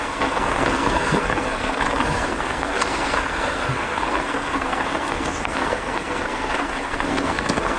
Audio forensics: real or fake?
fake